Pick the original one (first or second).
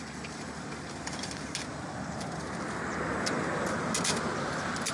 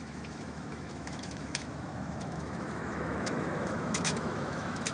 first